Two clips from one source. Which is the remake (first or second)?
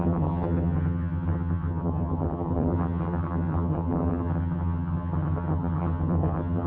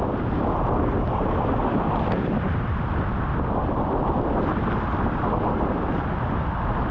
first